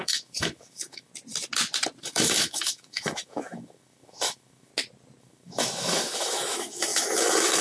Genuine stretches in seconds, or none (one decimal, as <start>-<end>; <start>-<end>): 1.1-2.0; 4.7-5.2